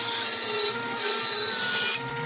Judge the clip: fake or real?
real